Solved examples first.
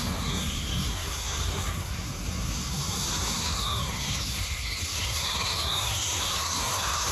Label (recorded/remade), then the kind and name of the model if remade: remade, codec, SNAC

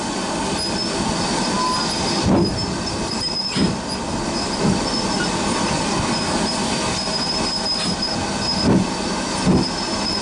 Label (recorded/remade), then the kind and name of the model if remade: recorded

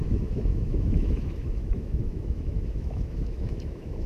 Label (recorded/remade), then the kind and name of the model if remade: remade, autoencoder, DAC-VAE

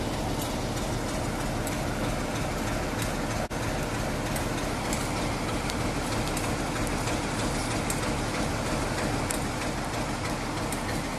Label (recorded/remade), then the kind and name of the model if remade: recorded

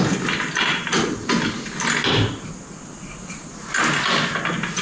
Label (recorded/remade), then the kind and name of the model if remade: recorded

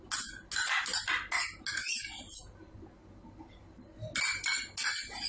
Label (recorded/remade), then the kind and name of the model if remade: recorded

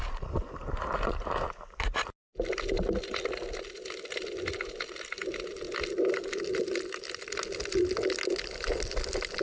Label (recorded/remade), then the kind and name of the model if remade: recorded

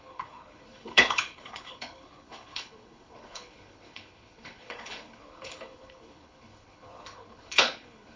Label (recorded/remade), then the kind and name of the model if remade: remade, codec, HILCodec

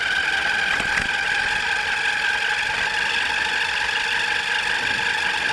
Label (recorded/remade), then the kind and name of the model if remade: recorded